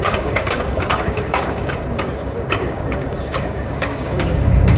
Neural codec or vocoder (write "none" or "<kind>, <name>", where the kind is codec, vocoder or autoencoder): codec, DAC